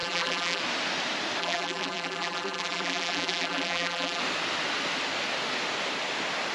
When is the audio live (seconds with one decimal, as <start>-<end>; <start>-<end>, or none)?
0.6-1.4; 4.2-6.5